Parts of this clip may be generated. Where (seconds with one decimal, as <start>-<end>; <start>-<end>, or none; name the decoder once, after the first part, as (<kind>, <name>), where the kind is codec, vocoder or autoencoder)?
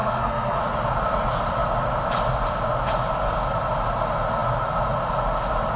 0.0-0.6 (codec, SNAC)